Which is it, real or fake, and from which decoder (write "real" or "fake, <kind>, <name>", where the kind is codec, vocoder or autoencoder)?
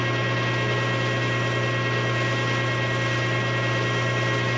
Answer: real